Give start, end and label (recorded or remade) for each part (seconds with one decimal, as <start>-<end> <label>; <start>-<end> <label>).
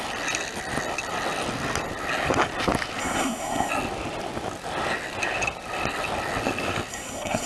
0.0-3.0 recorded; 3.0-3.7 remade; 3.7-6.9 recorded; 6.9-7.5 remade